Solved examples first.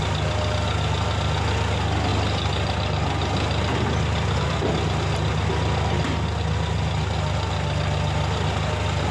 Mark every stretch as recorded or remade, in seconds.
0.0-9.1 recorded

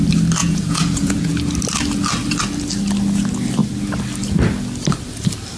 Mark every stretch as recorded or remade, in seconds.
0.0-0.4 recorded; 0.4-1.3 remade; 1.3-5.6 recorded

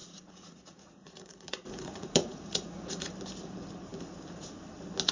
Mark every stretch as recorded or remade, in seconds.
0.0-3.1 remade; 3.1-5.1 recorded